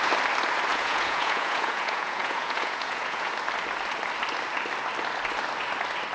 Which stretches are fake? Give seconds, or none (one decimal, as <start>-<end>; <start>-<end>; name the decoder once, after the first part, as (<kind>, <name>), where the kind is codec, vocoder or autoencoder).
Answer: 0.7-3.3 (vocoder, Vocos)